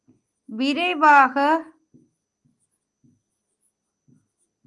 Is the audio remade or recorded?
recorded